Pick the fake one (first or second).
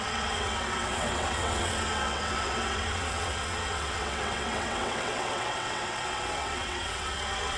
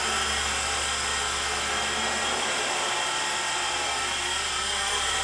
first